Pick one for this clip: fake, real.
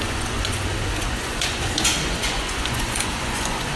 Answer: fake